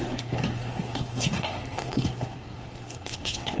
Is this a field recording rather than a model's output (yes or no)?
no